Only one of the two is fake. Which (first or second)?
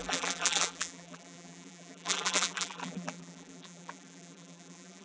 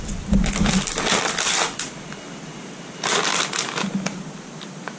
first